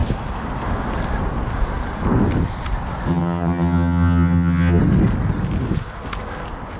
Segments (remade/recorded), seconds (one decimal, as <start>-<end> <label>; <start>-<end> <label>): 0.0-3.1 recorded; 3.1-4.8 remade; 4.8-6.8 recorded